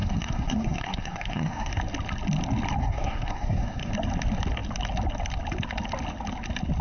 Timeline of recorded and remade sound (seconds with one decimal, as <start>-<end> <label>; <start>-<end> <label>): 0.0-1.7 remade; 1.7-2.8 recorded; 2.8-3.9 remade; 3.9-6.8 recorded